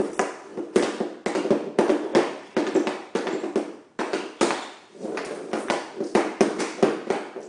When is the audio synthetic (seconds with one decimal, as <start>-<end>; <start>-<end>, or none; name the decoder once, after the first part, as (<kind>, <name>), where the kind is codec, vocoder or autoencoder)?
2.1-6.6 (vocoder, BigVGAN v2)